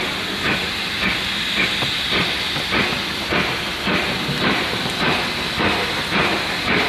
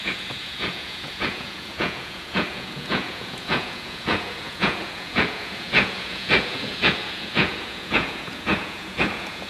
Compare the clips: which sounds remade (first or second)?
second